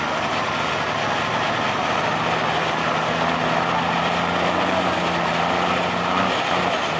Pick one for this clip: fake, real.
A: real